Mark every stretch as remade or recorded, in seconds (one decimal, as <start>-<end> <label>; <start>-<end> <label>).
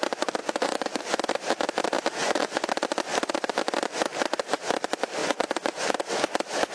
0.0-0.4 recorded; 0.4-1.0 remade; 1.0-2.2 recorded; 2.2-2.7 remade; 2.7-5.2 recorded; 5.2-6.1 remade; 6.1-6.7 recorded